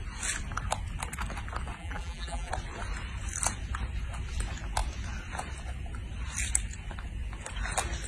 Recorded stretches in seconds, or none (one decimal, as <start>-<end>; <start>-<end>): 0.0-1.8; 2.5-8.1